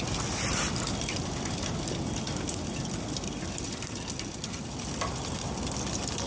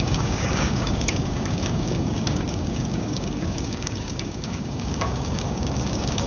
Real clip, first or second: first